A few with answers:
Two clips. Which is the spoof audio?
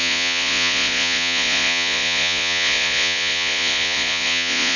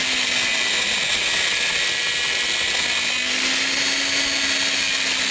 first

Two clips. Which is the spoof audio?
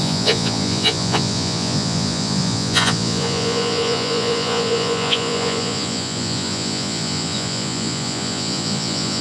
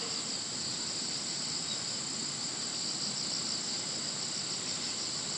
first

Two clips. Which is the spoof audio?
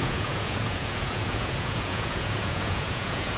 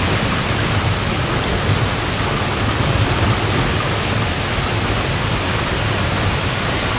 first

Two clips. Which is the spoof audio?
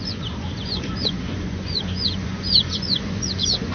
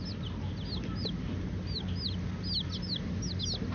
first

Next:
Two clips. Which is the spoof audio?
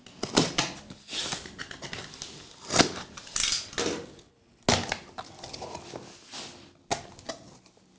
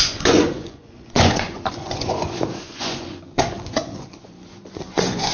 second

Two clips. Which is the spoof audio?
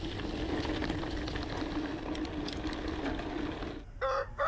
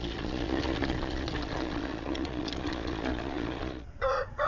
second